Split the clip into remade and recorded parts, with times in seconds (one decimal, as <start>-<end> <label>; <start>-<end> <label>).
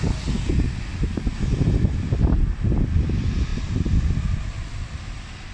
0.0-5.5 recorded